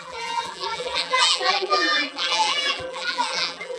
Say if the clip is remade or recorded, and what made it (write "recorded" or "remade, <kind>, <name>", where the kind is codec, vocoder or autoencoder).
remade, vocoder, BigVGAN v2